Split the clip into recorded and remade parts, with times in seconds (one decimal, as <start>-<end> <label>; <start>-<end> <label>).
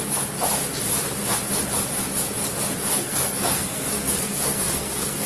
0.0-2.9 recorded; 2.9-5.3 remade